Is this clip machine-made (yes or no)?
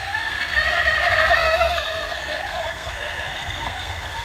yes